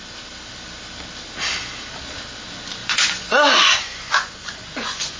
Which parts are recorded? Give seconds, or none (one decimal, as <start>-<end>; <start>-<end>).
0.0-2.8